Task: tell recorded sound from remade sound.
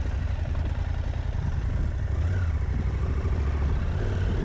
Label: recorded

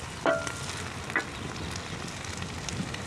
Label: recorded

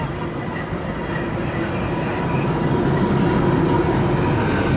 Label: recorded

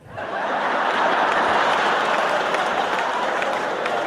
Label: remade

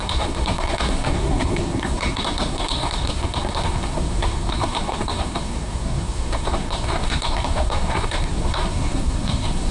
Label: remade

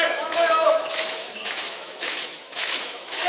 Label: remade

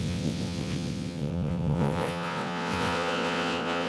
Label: remade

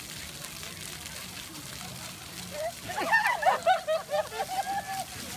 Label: recorded